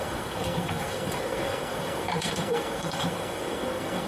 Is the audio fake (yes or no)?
yes